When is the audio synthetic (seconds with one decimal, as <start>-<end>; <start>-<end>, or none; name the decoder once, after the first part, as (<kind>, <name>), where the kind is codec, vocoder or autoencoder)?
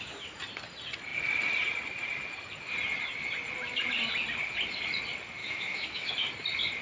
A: 5.4-6.1 (autoencoder, DAC-VAE)